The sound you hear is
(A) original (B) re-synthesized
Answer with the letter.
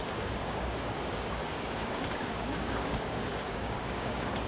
B